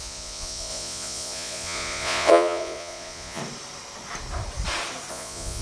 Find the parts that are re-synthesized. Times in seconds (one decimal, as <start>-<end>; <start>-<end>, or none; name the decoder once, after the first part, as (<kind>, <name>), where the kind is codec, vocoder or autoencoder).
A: 0.0-3.4 (vocoder, Vocos); 5.1-5.6